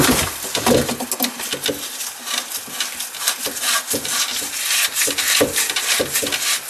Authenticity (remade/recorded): recorded